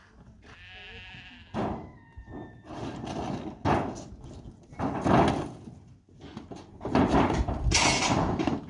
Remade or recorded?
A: recorded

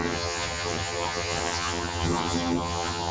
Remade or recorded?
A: remade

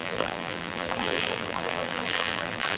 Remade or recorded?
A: remade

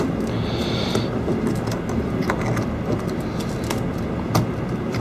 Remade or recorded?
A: recorded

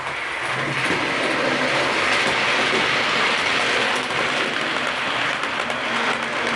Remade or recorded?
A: recorded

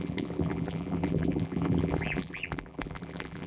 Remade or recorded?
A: remade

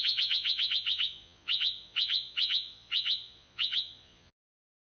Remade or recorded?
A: remade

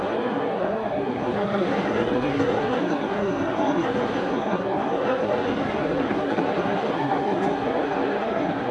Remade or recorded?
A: remade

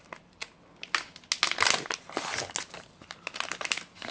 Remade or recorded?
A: recorded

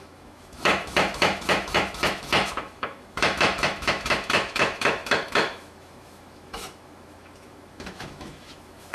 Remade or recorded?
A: remade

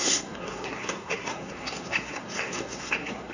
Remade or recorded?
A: remade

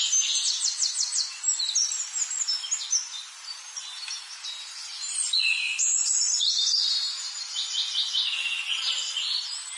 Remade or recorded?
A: recorded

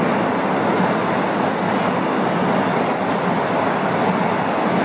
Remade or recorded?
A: recorded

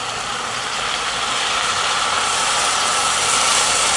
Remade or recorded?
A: recorded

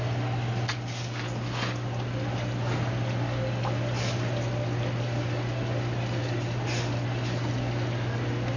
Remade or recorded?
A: recorded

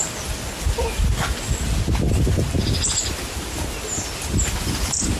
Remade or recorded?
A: recorded